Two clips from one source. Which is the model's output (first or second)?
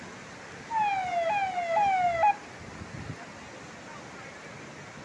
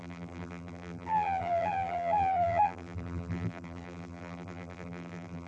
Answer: second